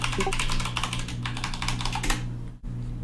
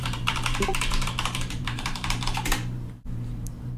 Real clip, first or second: first